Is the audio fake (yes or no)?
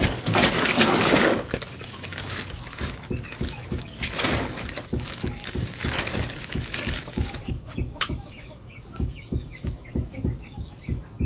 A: yes